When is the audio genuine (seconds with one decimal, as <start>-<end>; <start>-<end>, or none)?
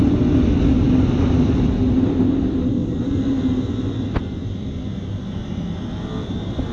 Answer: 0.0-6.7